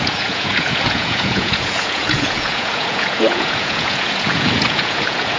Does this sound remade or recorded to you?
remade